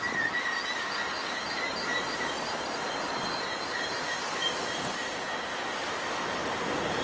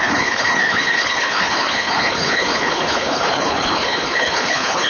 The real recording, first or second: first